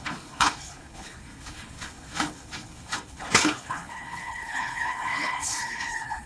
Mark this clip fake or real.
fake